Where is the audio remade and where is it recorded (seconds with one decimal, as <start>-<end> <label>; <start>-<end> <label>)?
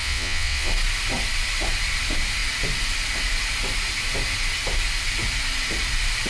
0.0-0.7 remade; 0.7-6.3 recorded